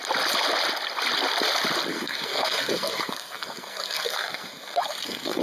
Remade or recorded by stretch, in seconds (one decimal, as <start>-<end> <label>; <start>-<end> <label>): 0.0-1.9 recorded; 1.9-5.4 remade